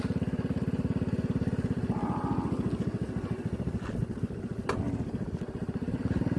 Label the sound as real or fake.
real